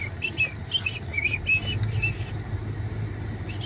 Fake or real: real